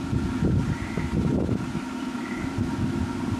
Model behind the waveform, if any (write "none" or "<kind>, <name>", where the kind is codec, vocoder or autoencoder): none